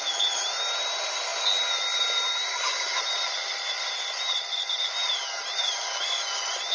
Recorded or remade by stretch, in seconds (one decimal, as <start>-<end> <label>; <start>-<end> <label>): 0.0-6.7 recorded